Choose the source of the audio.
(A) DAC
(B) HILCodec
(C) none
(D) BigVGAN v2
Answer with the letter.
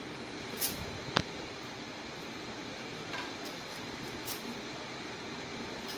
D